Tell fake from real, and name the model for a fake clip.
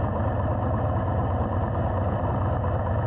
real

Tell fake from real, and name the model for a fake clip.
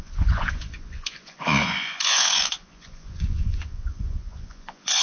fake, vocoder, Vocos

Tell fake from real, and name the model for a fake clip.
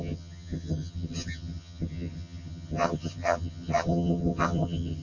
fake, vocoder, HiFi-GAN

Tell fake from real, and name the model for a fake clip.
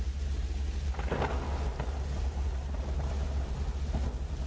real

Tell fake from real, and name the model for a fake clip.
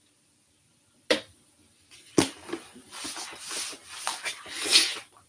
real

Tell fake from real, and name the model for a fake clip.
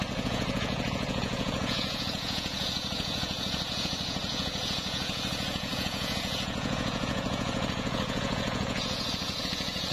fake, vocoder, Vocos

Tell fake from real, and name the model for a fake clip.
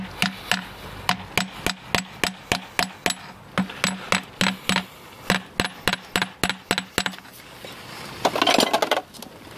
real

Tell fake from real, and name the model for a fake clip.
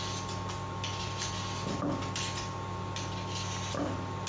real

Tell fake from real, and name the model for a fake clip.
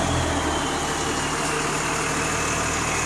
real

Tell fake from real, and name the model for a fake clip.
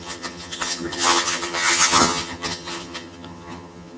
fake, vocoder, HiFi-GAN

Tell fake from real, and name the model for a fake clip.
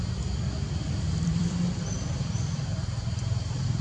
fake, vocoder, BigVGAN v2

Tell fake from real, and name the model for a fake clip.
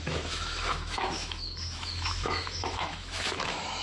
fake, autoencoder, DAC-VAE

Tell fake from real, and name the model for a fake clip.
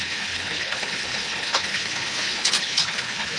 fake, codec, HILCodec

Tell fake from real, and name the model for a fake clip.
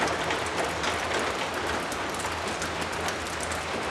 real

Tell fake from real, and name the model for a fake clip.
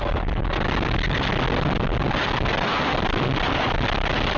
real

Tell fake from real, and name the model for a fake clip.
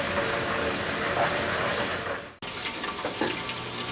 real